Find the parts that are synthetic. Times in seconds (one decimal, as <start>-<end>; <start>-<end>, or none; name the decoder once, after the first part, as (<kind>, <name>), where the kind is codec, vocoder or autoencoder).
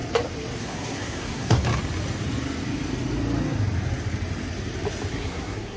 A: 0.6-1.6 (codec, SNAC); 5.1-5.8